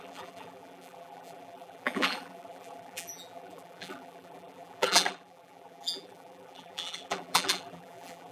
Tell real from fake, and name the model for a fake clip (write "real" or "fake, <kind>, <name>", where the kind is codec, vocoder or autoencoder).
fake, vocoder, BigVGAN v2